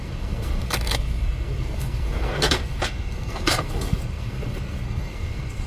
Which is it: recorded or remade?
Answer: remade